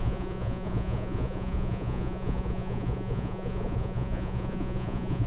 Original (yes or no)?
no